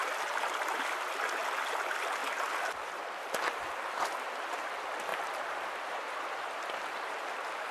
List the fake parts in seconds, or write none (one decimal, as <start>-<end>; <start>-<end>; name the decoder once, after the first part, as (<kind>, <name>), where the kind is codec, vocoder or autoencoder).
none